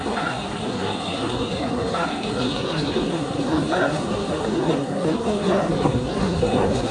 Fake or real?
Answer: fake